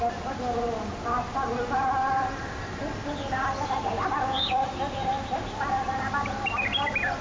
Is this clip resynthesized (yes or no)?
no